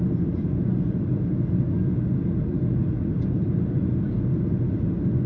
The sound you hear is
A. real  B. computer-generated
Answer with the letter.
A